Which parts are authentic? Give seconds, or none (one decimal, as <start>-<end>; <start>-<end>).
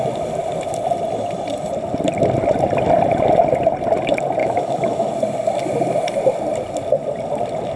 0.0-4.4; 5.1-7.8